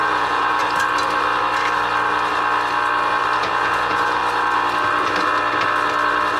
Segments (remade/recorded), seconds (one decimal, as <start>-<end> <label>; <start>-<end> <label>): 0.0-0.6 remade; 0.6-3.4 recorded; 3.4-4.2 remade; 4.2-6.4 recorded